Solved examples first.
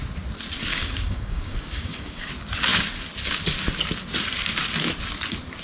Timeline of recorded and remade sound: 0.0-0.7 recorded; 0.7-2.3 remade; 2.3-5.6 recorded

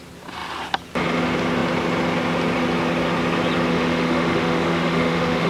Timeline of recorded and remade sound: 0.0-3.7 recorded; 3.7-5.5 remade

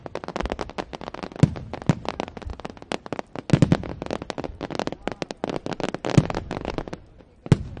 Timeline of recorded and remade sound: 0.0-7.8 recorded